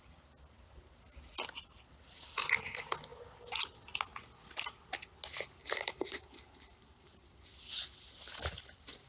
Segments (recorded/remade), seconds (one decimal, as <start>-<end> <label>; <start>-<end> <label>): 0.0-5.6 recorded; 5.6-7.2 remade; 7.2-9.1 recorded